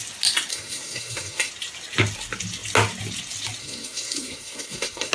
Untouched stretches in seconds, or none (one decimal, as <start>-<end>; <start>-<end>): 0.0-0.5; 1.5-3.6